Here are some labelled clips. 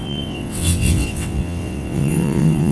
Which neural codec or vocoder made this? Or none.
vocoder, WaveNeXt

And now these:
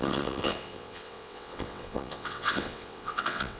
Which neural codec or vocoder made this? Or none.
vocoder, WaveNeXt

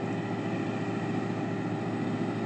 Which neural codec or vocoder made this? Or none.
none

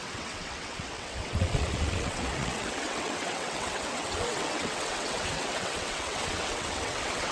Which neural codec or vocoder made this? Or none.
vocoder, WaveNeXt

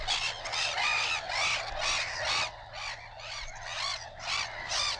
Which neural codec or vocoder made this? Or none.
none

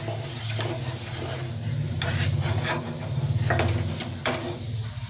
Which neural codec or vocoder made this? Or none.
none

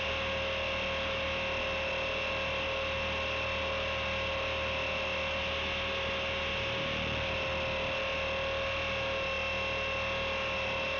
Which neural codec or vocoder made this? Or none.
none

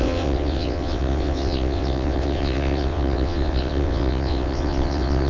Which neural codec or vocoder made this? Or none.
vocoder, WaveNeXt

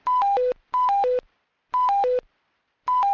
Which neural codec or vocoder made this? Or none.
none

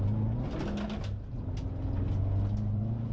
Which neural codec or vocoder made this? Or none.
none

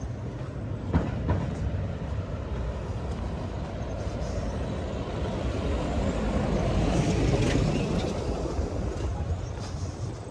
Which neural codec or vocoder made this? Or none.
none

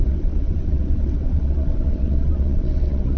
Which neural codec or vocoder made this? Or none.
vocoder, WaveNeXt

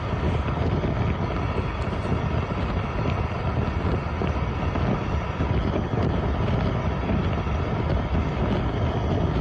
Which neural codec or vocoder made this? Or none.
none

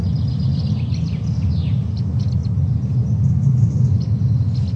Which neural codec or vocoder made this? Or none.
none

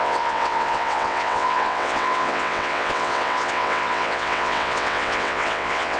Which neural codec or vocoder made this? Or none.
vocoder, WaveNeXt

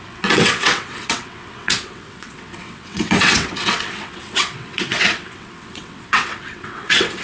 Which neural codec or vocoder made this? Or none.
vocoder, WaveNeXt